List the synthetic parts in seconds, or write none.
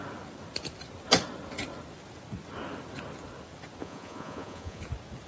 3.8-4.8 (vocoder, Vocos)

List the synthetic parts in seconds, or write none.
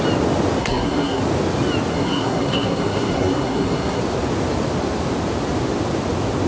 0.6-1.2 (codec, SNAC); 1.9-4.0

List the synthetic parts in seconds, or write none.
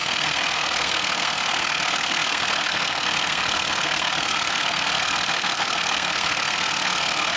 0.0-7.4 (codec, SNAC)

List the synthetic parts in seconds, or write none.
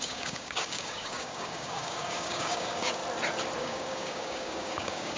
0.0-3.0 (codec, DAC); 3.6-5.2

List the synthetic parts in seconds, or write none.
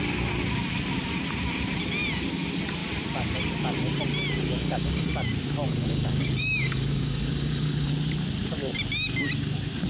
4.6-5.1 (codec, DAC); 5.7-7.9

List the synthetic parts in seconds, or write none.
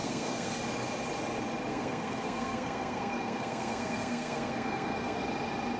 0.0-0.5 (codec, SNAC); 1.7-5.2